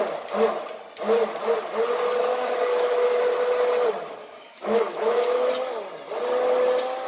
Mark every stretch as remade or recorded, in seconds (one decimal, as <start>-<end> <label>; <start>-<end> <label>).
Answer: 0.0-2.3 recorded; 2.3-3.2 remade; 3.2-4.2 recorded; 4.2-5.5 remade; 5.5-7.1 recorded